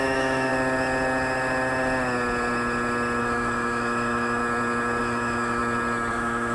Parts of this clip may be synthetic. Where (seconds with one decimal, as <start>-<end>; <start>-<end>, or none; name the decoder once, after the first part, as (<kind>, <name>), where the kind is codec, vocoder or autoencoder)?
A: 0.0-0.5 (autoencoder, DAC-VAE); 3.2-4.4; 5.0-5.6; 6.1-6.5